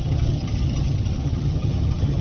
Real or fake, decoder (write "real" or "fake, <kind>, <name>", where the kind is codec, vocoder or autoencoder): fake, vocoder, HiFi-GAN